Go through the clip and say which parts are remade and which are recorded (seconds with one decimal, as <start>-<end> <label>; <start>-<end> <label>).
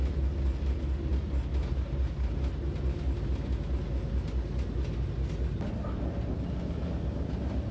0.0-7.7 recorded